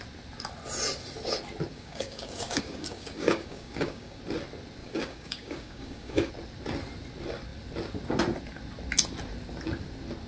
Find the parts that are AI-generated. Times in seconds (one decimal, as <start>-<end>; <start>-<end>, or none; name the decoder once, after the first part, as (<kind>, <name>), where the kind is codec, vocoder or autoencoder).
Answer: 1.7-4.2 (codec, DAC); 4.8-6.3